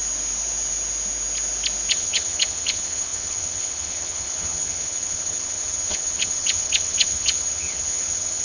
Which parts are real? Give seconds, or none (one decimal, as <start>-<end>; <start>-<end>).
0.0-1.9